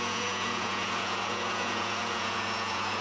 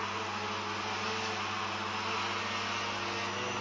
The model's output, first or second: first